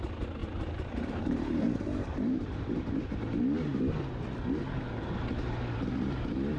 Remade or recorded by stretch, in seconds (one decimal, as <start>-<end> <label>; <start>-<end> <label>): 0.0-0.4 recorded; 0.4-3.0 remade; 3.0-6.6 recorded